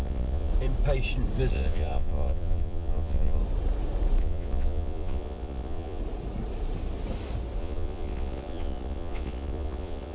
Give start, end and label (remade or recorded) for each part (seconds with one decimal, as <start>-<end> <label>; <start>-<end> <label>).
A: 0.0-0.5 remade; 0.5-1.5 recorded; 1.5-3.4 remade; 3.4-4.2 recorded; 4.2-6.0 remade; 6.0-7.6 recorded; 7.6-10.1 remade